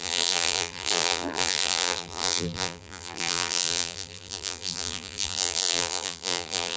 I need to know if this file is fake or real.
fake